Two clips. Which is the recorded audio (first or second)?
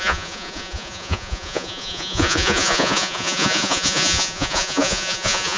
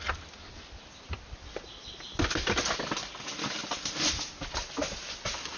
second